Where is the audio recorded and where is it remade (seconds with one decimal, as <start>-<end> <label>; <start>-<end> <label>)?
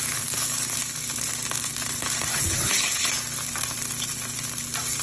0.0-2.3 recorded; 2.3-3.1 remade; 3.1-5.0 recorded